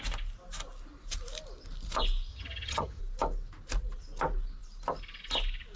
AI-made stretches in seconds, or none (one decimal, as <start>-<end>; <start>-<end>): 2.3-3.0